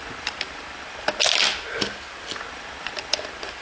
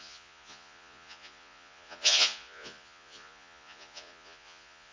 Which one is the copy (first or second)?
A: second